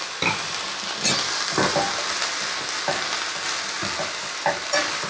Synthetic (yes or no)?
no